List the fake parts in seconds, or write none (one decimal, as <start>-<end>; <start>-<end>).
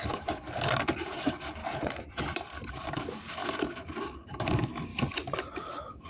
0.0-1.6; 2.7-4.9; 5.5-6.1